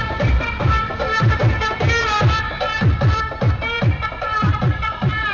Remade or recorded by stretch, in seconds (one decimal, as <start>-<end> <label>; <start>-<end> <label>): 0.0-5.3 remade

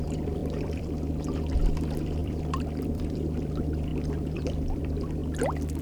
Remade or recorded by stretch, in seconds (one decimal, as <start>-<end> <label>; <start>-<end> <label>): 0.0-5.2 remade; 5.2-5.8 recorded

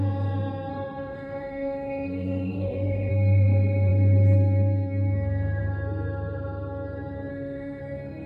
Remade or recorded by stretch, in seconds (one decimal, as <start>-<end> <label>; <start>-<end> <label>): 0.0-0.7 recorded; 0.7-3.1 remade; 3.1-7.3 recorded; 7.3-7.8 remade; 7.8-8.3 recorded

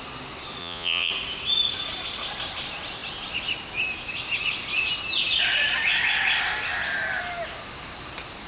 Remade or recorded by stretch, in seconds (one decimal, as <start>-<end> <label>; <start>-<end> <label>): 0.0-0.6 recorded; 0.6-1.1 remade; 1.1-8.5 recorded